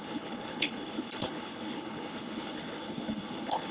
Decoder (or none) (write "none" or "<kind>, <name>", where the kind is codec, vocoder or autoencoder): codec, HILCodec